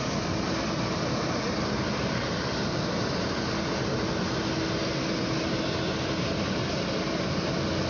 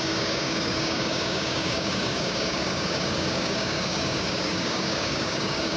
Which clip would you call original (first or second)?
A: first